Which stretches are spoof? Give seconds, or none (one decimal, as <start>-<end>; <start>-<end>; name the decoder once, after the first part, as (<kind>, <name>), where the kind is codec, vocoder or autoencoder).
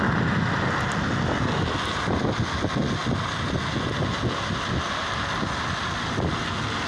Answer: none